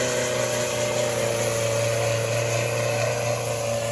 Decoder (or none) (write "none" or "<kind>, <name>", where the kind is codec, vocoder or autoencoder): none